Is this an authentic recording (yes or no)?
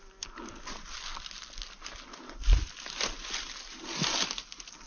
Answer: yes